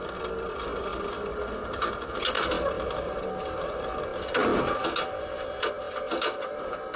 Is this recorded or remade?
recorded